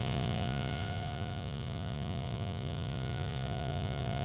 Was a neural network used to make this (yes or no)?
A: yes